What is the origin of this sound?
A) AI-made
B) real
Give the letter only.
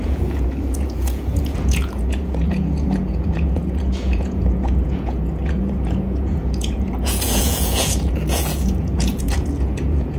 A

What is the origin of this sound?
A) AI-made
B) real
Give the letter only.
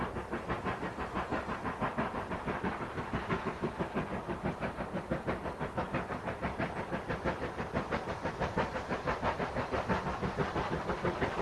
B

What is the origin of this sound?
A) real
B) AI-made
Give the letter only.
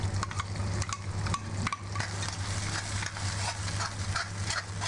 A